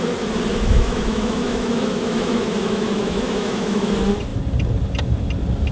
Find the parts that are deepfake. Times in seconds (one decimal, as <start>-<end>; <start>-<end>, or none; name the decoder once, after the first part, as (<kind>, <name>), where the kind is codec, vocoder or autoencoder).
0.5-3.9 (autoencoder, DAC-VAE)